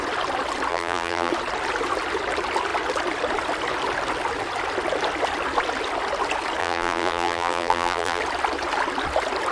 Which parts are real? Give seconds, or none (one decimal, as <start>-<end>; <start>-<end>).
0.0-0.7; 1.3-6.6; 8.2-9.5